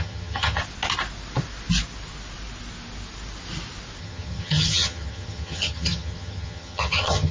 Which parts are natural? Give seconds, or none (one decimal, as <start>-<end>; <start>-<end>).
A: 0.6-4.0